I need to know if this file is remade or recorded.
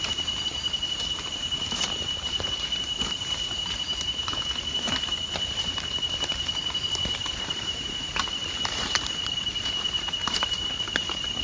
remade